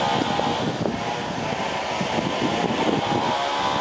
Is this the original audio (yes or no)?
yes